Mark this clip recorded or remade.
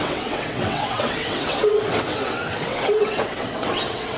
remade